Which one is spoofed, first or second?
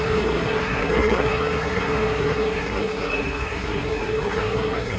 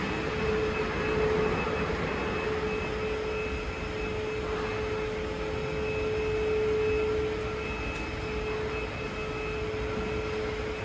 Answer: first